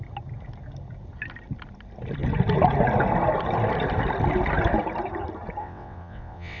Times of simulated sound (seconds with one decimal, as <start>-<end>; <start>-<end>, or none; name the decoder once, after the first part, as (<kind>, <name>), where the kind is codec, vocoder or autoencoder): 5.6-6.6 (vocoder, WaveNeXt)